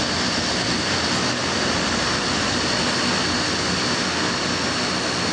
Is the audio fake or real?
real